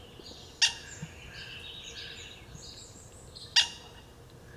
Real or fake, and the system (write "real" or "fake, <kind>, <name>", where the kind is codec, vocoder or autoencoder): real